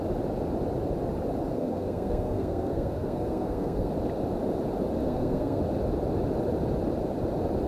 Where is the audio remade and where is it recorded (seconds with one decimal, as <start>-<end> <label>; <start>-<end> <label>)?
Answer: 0.0-1.5 recorded; 1.5-3.9 remade; 3.9-5.0 recorded; 5.0-5.6 remade; 5.6-7.7 recorded